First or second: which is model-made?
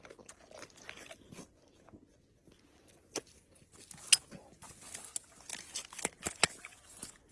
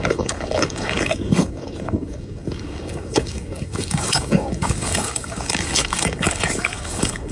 second